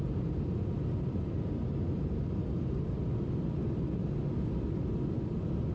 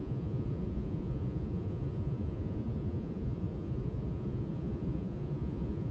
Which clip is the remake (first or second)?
second